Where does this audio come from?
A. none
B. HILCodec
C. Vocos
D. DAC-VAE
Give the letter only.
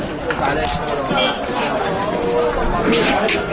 A